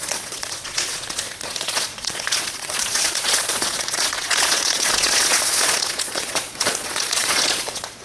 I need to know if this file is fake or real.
fake